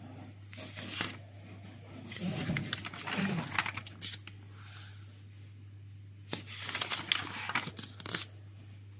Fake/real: real